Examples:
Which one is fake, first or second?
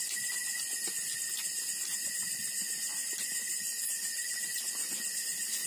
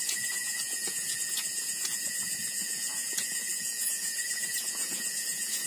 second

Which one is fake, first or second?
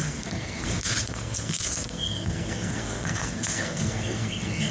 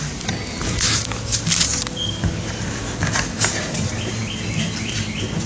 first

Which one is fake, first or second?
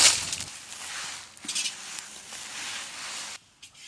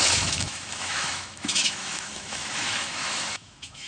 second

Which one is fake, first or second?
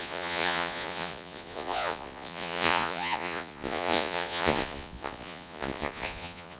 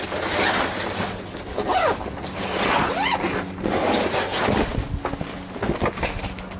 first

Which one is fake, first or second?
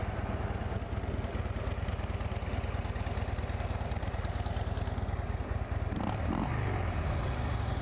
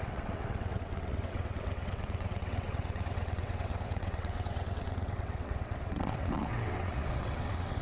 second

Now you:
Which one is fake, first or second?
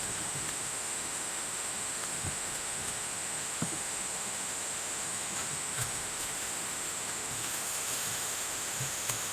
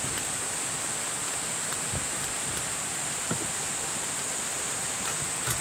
first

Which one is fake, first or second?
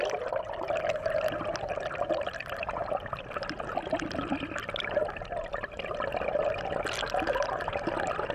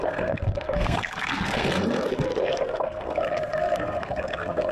second